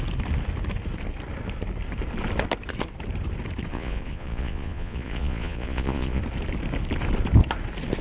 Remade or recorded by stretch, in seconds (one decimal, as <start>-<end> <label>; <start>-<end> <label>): 0.0-3.7 recorded; 3.7-6.2 remade; 6.2-8.0 recorded